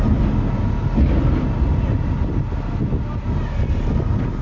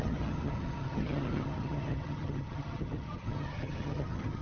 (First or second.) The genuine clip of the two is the first